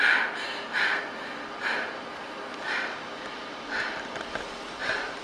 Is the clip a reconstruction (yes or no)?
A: no